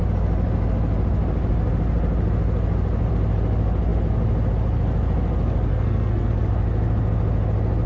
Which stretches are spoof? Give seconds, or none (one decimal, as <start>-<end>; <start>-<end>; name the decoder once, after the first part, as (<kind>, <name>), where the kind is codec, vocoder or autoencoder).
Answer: 5.7-6.3 (codec, SNAC)